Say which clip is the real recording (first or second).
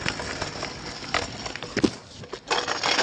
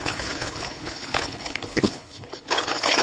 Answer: first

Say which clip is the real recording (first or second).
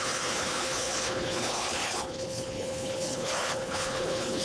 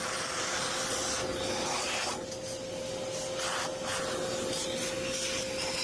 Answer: second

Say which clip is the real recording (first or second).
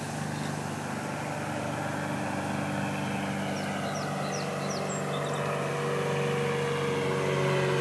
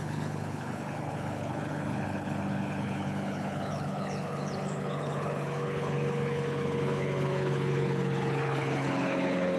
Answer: first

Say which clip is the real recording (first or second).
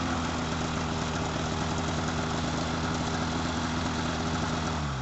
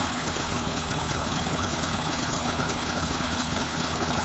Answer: first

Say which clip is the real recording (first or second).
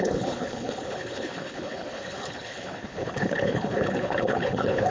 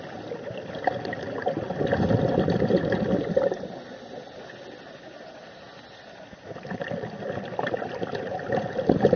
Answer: second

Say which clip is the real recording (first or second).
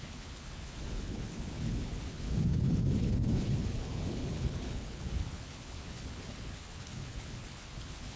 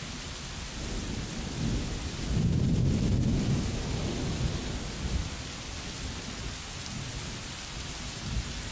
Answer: second